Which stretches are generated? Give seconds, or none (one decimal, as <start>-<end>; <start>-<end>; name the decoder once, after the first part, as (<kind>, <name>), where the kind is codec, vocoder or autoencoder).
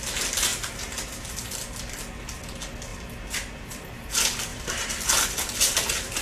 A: 2.9-4.1 (vocoder, BigVGAN v2); 4.5-6.2